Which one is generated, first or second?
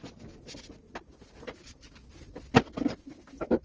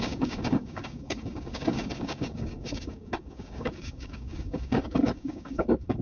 second